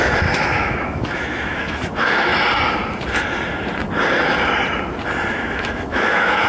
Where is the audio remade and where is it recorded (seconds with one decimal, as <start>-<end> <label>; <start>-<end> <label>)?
0.0-2.3 remade; 2.3-5.3 recorded; 5.3-6.5 remade